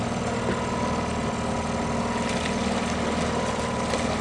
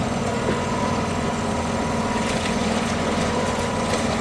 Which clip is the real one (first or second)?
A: first